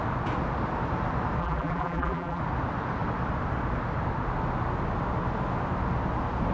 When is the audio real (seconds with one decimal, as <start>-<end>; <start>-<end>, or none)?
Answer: 0.0-1.4; 2.4-6.5